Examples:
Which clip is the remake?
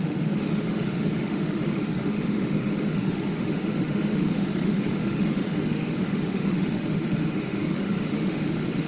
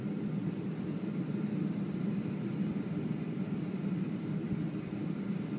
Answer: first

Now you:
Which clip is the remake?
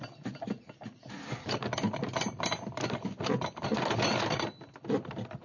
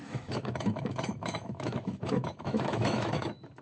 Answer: second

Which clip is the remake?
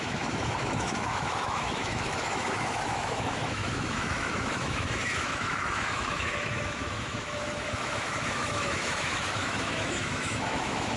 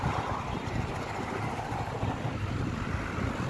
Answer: first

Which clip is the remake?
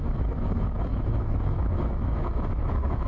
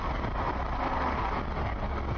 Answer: first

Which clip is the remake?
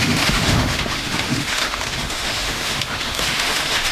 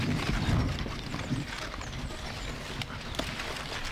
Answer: first